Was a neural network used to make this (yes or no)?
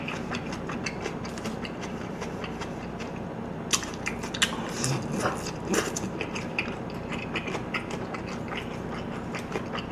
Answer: no